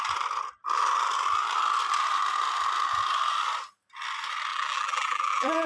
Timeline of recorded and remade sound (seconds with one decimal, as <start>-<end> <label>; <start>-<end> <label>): 0.0-4.5 recorded; 4.5-5.7 remade